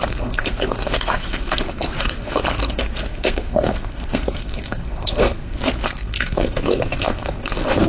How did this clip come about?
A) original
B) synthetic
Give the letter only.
B